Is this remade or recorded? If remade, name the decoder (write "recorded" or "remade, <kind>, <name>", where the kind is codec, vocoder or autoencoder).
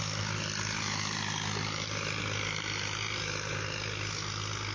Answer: recorded